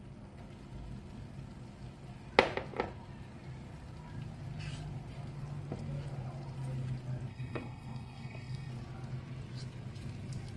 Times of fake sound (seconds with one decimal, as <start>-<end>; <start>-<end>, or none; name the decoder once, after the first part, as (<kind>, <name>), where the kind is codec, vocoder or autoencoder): 7.3-8.7 (codec, SNAC)